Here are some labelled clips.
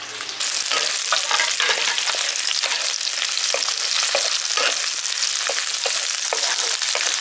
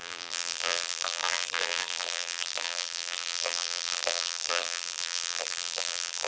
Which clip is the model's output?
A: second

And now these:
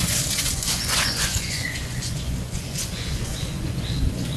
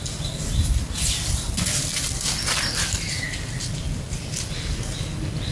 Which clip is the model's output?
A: first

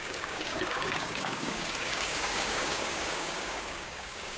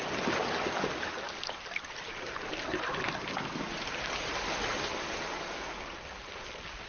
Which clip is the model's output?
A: first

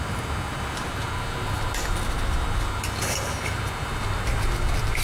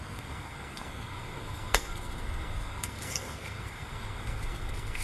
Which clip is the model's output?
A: second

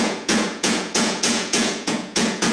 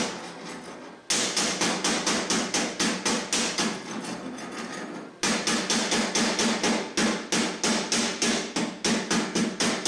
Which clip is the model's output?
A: first